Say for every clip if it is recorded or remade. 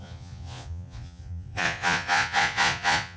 remade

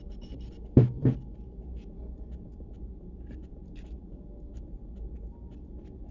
remade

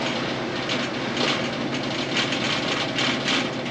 recorded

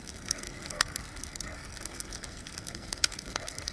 remade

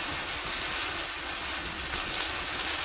recorded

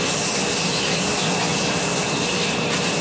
recorded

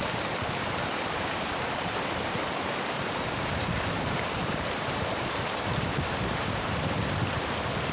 remade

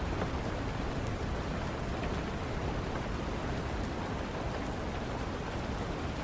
recorded